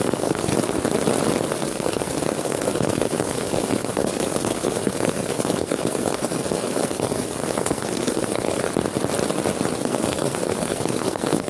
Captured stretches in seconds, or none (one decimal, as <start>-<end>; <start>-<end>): 0.5-1.5; 8.7-9.8